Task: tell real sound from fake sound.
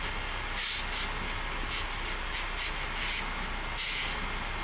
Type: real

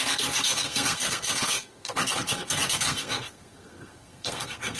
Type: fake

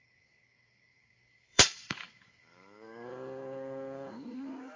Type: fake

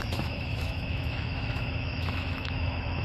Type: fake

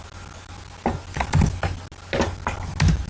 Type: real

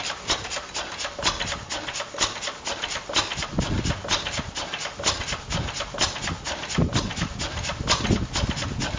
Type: real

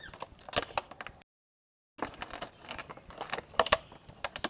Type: real